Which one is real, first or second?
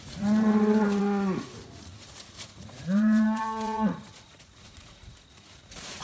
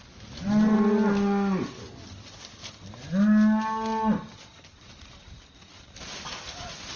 second